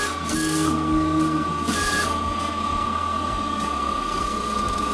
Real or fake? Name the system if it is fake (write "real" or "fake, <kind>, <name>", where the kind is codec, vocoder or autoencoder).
fake, codec, SNAC